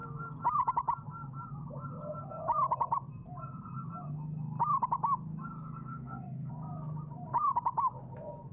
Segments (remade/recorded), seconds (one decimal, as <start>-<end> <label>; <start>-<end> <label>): 0.0-5.9 recorded; 5.9-6.5 remade; 6.5-8.5 recorded